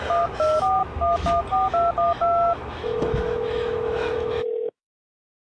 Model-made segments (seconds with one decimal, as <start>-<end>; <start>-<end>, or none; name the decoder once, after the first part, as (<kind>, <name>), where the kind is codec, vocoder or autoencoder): 0.8-1.4 (autoencoder, DAC-VAE); 2.2-5.4